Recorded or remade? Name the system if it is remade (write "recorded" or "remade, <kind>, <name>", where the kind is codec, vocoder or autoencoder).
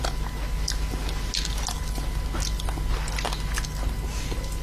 recorded